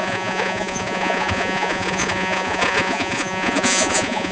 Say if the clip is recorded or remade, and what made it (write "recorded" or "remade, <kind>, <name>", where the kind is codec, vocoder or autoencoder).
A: remade, vocoder, Vocos